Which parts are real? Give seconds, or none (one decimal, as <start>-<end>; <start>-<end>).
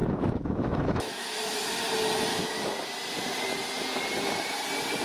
1.6-2.3; 2.9-5.0